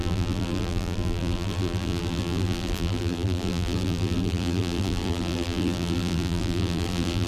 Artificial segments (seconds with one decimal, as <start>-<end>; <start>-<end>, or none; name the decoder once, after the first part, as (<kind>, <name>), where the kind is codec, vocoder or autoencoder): 0.0-7.3 (vocoder, BigVGAN v2)